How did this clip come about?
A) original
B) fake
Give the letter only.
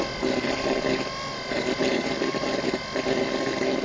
A